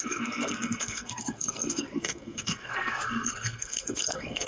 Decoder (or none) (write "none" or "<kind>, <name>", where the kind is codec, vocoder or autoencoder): codec, SNAC